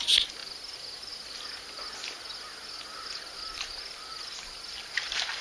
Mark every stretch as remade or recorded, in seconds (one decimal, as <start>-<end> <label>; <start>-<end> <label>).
0.0-5.4 recorded